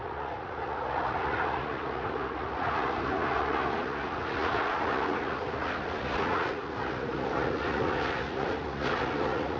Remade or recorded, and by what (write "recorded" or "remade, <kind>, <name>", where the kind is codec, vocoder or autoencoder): remade, vocoder, Vocos